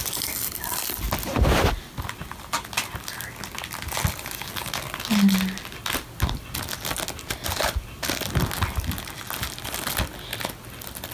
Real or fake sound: real